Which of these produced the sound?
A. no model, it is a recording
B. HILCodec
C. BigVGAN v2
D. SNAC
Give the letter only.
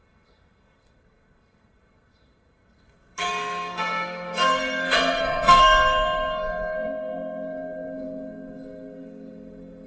D